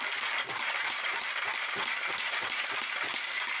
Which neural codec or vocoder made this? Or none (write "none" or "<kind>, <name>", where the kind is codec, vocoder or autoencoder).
none